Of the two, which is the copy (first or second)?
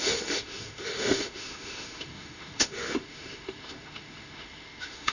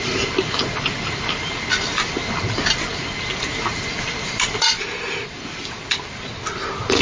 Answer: first